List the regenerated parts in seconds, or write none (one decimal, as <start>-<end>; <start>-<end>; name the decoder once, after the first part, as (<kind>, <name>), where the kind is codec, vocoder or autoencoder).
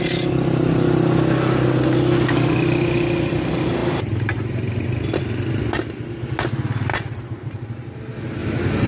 3.8-5.2 (vocoder, BigVGAN v2); 6.9-8.0; 8.4-8.9